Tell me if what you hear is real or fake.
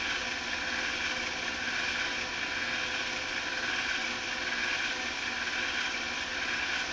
real